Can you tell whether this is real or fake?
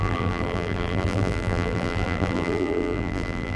fake